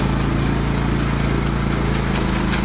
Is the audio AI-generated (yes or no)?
no